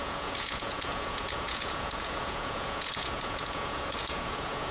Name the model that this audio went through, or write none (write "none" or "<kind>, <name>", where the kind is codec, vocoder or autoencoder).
vocoder, Vocos